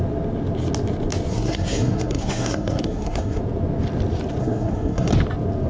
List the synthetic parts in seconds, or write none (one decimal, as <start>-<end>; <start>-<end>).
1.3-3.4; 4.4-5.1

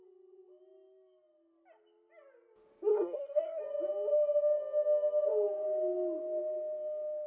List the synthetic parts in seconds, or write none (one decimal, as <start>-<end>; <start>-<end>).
2.9-3.6

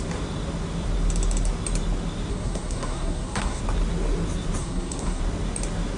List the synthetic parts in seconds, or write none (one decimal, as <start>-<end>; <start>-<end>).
2.3-3.6; 4.6-5.2

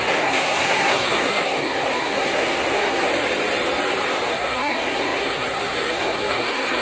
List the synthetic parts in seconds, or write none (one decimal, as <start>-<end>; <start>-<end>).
0.0-3.1; 4.3-6.8

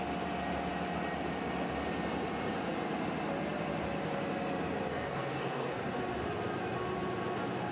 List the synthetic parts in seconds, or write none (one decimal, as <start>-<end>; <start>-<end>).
4.9-6.0

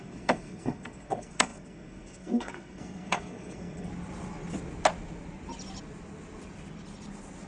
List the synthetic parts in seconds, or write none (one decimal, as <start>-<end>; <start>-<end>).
0.0-3.9

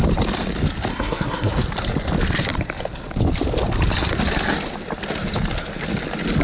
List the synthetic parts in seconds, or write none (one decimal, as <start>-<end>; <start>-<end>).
0.9-1.6